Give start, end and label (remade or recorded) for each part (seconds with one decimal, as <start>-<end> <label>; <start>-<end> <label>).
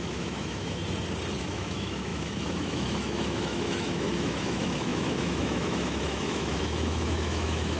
0.0-0.8 remade; 0.8-1.4 recorded; 1.4-7.8 remade